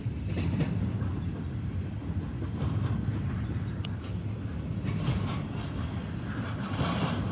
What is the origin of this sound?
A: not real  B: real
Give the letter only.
B